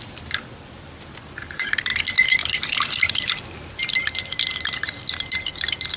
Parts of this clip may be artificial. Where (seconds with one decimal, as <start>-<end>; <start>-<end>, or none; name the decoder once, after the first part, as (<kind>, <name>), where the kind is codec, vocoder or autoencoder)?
none